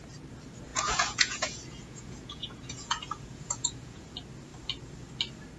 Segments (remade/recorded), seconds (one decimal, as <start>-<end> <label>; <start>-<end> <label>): 0.0-0.7 recorded; 0.7-4.1 remade; 4.1-5.6 recorded

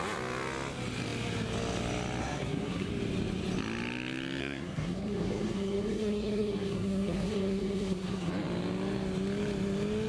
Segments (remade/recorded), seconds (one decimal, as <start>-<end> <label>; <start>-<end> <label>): 0.0-2.2 recorded; 2.2-2.9 remade; 2.9-4.4 recorded; 4.4-8.3 remade; 8.3-10.1 recorded

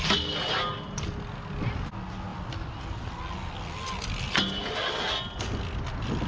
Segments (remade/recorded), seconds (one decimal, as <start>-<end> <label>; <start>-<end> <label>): 0.0-6.3 recorded

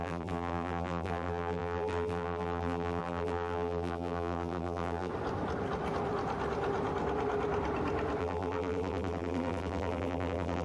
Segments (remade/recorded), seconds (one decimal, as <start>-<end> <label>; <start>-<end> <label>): 0.0-5.1 remade; 5.1-8.2 recorded; 8.2-10.6 remade

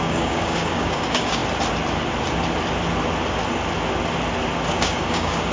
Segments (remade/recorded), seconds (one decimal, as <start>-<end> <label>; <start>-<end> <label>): 0.0-1.4 remade; 1.4-4.7 recorded; 4.7-5.5 remade

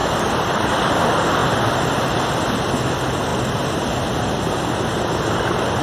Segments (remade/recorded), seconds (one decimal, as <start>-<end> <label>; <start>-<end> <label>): 0.0-0.8 remade; 0.8-1.4 recorded; 1.4-2.2 remade; 2.2-5.8 recorded

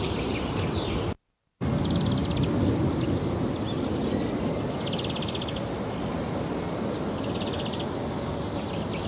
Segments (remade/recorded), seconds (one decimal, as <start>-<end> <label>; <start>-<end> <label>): 0.0-9.1 recorded

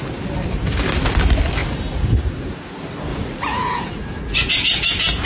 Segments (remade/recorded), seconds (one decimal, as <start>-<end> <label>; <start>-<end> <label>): 0.0-3.1 recorded; 3.1-4.5 remade; 4.5-5.3 recorded